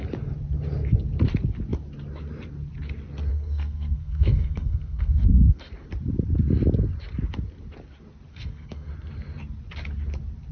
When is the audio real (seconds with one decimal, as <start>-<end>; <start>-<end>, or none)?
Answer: 0.0-3.3; 5.7-8.3; 8.9-10.5